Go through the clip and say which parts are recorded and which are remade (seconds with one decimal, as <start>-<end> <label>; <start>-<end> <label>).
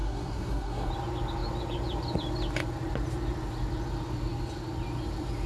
0.0-0.9 remade; 0.9-5.5 recorded